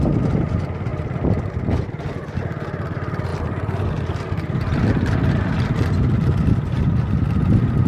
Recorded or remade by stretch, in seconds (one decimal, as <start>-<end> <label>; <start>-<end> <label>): 0.0-7.9 recorded